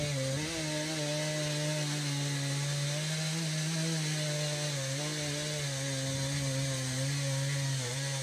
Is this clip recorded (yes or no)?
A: yes